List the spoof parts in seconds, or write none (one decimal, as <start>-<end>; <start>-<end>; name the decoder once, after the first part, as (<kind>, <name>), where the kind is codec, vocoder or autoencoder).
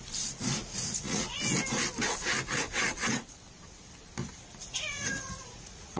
0.6-1.4 (vocoder, Vocos); 4.6-6.0